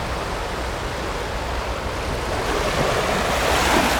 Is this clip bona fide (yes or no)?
yes